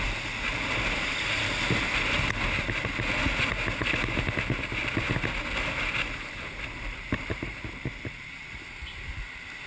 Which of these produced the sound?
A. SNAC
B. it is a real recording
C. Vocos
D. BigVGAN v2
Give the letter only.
B